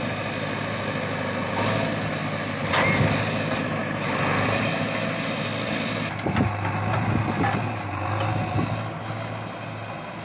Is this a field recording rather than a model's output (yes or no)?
yes